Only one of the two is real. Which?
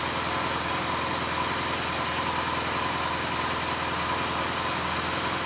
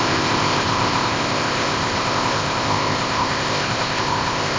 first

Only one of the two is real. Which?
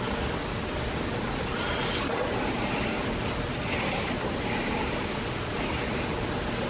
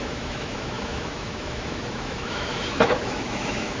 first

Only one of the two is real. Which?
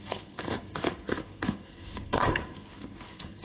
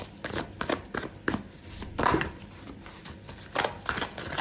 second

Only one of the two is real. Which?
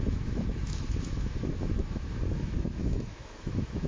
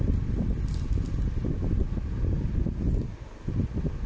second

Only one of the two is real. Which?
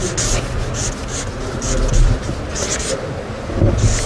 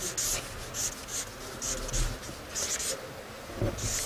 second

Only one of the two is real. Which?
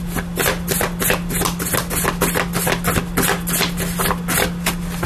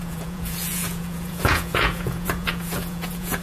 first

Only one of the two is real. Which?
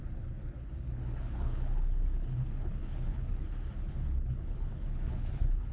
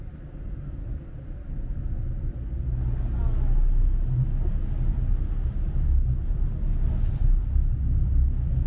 second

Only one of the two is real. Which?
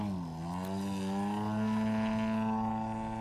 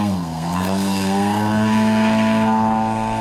first